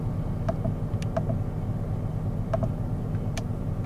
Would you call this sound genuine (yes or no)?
yes